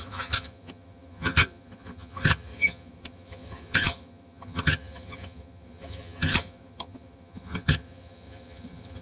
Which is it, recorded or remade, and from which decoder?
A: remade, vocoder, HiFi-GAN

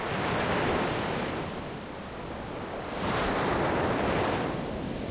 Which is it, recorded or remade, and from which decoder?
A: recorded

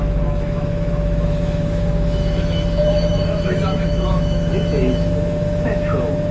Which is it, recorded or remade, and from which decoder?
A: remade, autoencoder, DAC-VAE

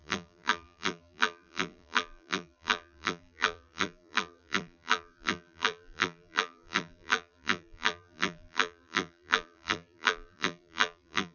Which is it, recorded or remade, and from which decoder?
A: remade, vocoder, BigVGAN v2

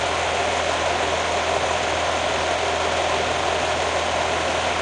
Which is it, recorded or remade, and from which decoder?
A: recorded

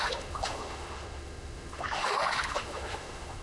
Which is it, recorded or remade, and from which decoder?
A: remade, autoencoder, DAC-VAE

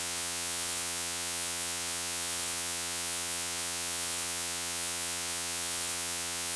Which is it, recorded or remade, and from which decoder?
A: remade, vocoder, WaveNeXt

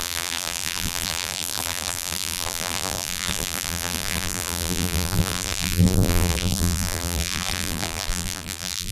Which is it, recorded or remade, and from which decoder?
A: remade, vocoder, BigVGAN v2